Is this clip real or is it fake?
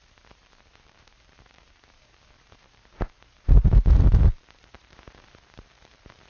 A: fake